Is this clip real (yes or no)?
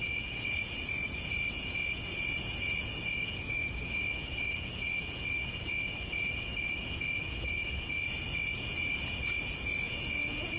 no